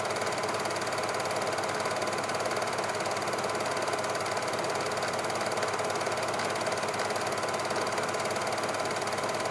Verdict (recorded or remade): recorded